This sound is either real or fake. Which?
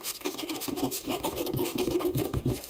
fake